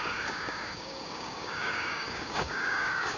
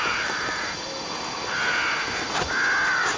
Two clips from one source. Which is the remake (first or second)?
first